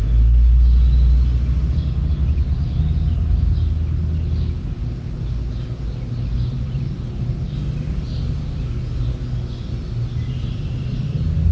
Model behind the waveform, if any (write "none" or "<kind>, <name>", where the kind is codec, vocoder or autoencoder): none